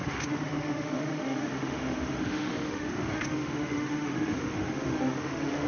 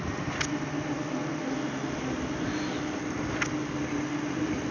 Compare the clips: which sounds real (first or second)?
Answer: second